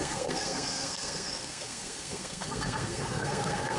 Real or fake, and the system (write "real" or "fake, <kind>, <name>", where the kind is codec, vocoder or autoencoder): fake, codec, SNAC